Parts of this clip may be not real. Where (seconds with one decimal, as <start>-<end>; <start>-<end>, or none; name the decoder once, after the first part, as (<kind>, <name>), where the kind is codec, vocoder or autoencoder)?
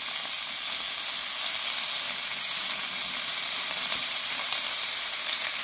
3.3-5.6 (vocoder, BigVGAN v2)